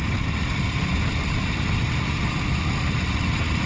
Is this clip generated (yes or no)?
no